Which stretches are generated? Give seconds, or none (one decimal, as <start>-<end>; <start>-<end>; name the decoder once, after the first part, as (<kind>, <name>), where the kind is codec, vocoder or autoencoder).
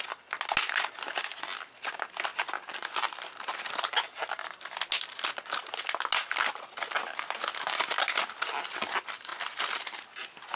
2.3-3.1 (vocoder, BigVGAN v2)